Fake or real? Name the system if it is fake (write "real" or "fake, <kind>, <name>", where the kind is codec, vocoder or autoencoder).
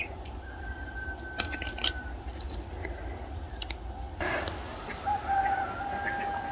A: fake, vocoder, BigVGAN v2